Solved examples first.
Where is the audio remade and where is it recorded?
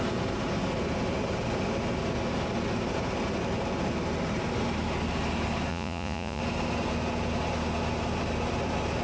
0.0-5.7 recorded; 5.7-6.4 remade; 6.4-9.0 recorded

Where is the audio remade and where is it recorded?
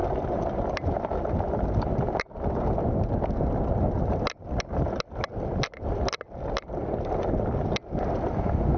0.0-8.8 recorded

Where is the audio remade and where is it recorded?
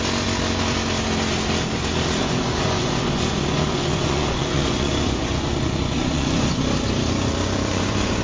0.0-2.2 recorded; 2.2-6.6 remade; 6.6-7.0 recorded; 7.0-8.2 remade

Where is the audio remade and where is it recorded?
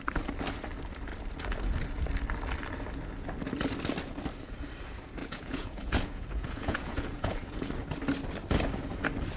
0.0-5.2 recorded; 5.2-7.7 remade; 7.7-9.4 recorded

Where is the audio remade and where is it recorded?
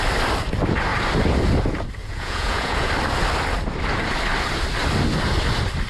0.0-2.0 recorded; 2.0-2.9 remade; 2.9-5.9 recorded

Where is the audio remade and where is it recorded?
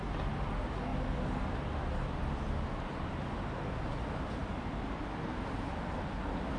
0.0-6.6 recorded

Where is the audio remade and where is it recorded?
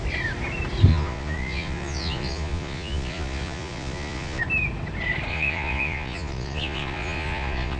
0.0-0.9 recorded; 0.9-4.4 remade; 4.4-5.3 recorded; 5.3-7.8 remade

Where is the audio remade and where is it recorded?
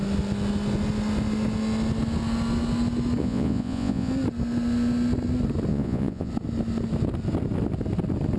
0.0-3.2 recorded; 3.2-4.1 remade; 4.1-5.7 recorded; 5.7-6.3 remade; 6.3-8.4 recorded